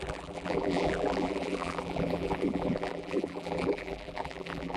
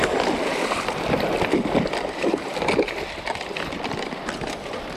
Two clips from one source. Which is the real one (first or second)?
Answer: second